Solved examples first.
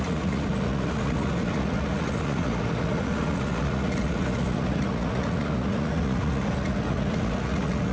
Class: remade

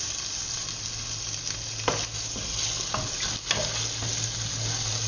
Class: recorded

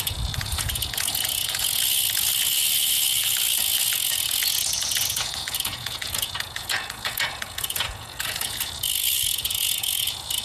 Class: remade